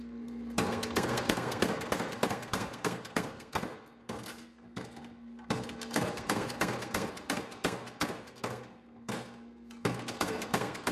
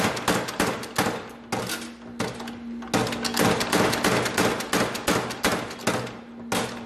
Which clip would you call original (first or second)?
second